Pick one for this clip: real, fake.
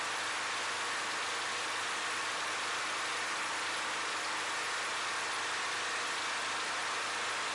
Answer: real